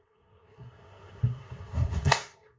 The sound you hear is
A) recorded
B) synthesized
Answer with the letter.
B